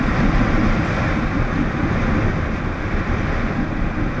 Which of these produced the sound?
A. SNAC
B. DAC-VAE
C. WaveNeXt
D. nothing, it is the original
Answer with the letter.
D